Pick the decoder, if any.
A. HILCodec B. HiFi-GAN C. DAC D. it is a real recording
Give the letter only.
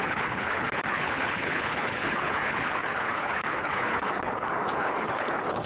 A